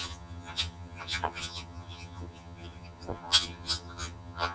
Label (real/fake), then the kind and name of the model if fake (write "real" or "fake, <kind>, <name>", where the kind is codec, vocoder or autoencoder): fake, vocoder, HiFi-GAN